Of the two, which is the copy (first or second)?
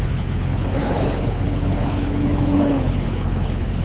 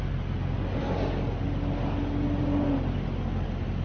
first